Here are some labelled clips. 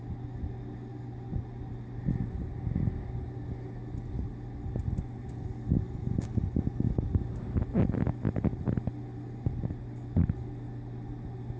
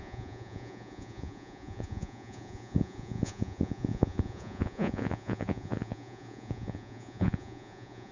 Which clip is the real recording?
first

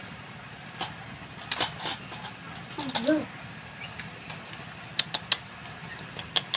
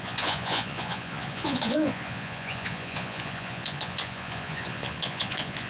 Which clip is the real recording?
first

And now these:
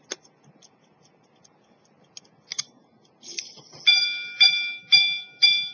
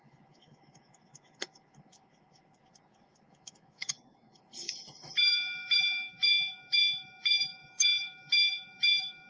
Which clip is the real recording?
first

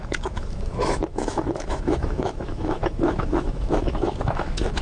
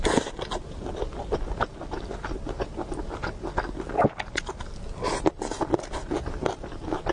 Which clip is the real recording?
second